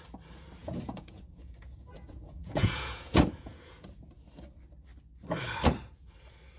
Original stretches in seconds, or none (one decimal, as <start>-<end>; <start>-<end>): 0.0-0.6; 4.1-6.6